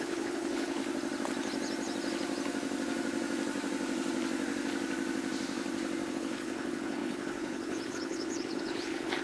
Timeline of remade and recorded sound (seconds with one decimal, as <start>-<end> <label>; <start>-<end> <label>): 0.0-0.8 remade; 0.8-6.1 recorded; 6.1-9.2 remade